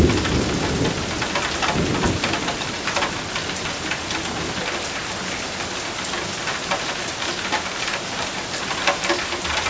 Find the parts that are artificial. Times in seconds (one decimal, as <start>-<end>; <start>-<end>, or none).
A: none